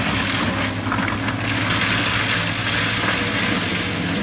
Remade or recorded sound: recorded